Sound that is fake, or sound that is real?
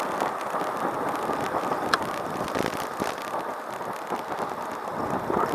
real